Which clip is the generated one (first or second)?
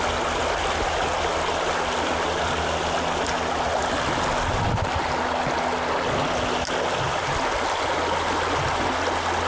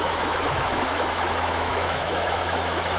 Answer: second